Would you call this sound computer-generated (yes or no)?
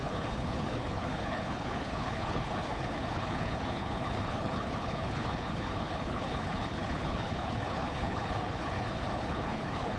yes